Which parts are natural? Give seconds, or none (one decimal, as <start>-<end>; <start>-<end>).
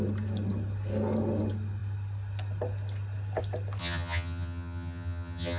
0.0-3.8